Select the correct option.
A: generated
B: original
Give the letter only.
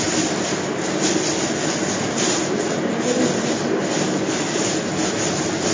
B